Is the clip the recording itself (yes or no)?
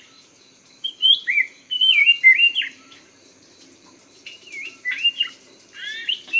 no